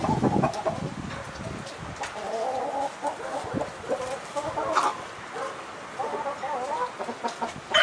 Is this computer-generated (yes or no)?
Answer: no